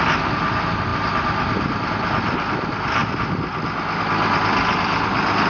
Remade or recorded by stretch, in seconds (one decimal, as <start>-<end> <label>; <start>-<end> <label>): 0.0-5.5 recorded